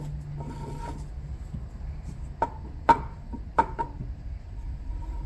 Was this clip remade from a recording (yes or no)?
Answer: no